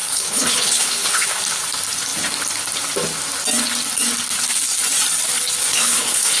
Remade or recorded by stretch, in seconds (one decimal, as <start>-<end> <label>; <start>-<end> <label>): 0.0-1.4 remade; 1.4-5.6 recorded; 5.6-6.4 remade